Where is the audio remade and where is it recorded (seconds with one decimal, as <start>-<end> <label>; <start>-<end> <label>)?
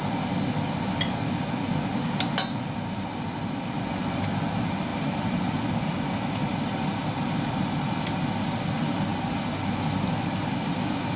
0.0-4.9 recorded; 4.9-5.4 remade; 5.4-11.2 recorded